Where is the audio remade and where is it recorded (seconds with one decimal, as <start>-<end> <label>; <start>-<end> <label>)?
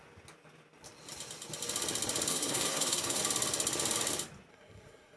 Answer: 0.0-2.3 recorded; 2.3-3.2 remade; 3.2-4.5 recorded; 4.5-5.2 remade